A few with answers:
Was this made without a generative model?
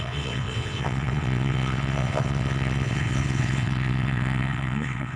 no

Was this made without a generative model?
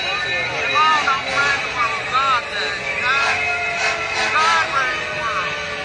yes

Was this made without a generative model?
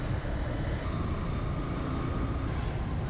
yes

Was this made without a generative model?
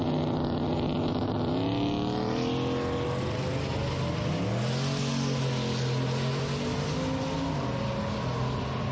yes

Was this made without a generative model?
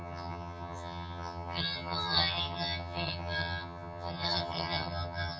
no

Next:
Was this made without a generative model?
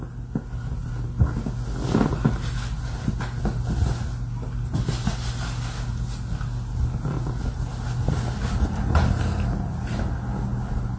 yes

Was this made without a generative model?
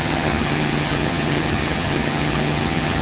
no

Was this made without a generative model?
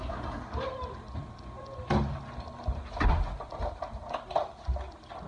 yes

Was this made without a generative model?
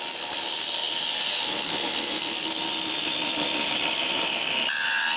yes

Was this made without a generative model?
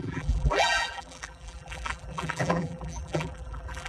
no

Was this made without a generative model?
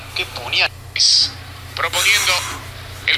yes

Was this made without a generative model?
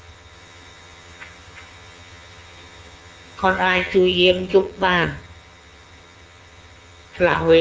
no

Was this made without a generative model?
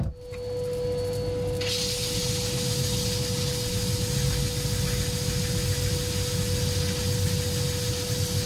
yes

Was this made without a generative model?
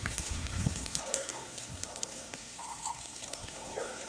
no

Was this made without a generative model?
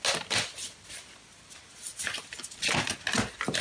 yes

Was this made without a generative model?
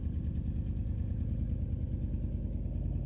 yes